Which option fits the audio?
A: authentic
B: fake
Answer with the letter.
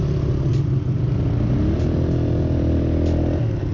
A